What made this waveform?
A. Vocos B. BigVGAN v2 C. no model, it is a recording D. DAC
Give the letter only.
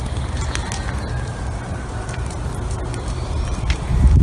C